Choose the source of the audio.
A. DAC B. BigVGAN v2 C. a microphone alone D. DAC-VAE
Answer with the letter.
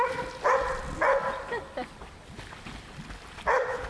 C